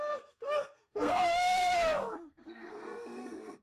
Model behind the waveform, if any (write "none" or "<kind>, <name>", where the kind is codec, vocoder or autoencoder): codec, SNAC